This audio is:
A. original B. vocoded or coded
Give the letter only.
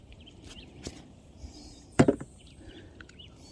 B